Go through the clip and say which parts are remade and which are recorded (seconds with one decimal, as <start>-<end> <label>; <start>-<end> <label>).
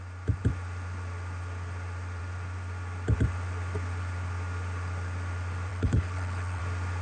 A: 0.0-5.7 recorded; 5.7-6.6 remade; 6.6-7.0 recorded